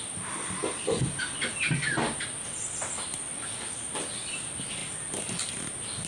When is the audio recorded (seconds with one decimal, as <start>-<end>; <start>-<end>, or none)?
0.0-6.1